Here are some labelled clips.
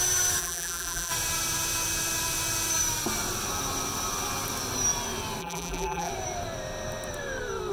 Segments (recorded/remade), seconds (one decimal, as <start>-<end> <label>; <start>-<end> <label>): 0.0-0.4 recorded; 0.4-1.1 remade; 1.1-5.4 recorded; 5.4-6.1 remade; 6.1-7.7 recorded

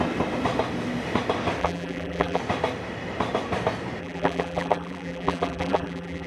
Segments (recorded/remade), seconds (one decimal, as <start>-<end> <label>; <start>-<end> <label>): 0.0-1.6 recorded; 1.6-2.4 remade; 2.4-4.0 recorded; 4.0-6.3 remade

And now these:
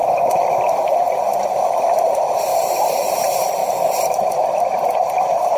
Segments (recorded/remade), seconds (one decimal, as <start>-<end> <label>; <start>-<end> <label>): 0.0-2.5 recorded; 2.5-3.1 remade; 3.1-5.6 recorded